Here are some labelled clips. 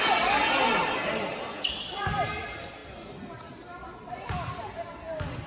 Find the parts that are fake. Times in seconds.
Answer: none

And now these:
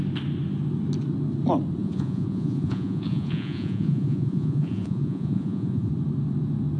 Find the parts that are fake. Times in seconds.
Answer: 1.8-5.9 (vocoder, Vocos)

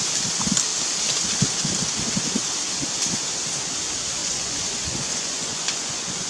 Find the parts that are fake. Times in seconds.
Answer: 4.2-6.3 (vocoder, Vocos)

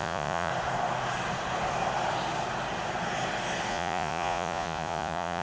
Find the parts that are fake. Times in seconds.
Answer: 0.0-0.5 (vocoder, Vocos); 3.7-5.4

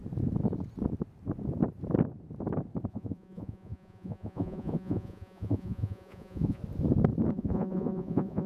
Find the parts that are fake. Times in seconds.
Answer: 2.9-6.6 (vocoder, Vocos); 7.3-8.5

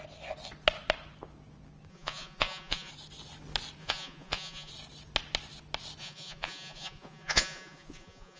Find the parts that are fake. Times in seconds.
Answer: 1.9-2.9 (vocoder, Vocos); 3.8-4.7; 6.0-8.4

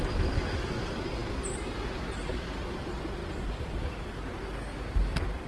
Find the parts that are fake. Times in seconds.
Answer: none